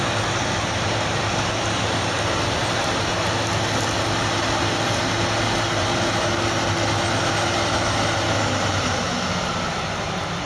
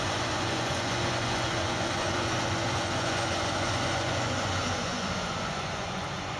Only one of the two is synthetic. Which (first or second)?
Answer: second